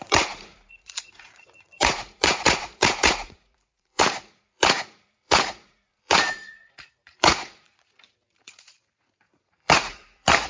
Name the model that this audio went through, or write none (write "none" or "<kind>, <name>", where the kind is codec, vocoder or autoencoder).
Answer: vocoder, Vocos